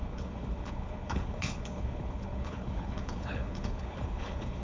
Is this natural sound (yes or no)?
no